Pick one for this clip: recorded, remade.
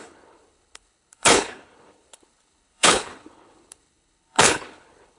remade